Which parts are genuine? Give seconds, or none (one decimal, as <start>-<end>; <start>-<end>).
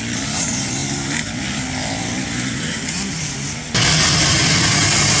0.0-5.2